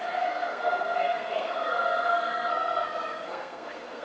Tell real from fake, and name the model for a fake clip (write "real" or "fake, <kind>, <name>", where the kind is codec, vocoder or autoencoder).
fake, codec, SNAC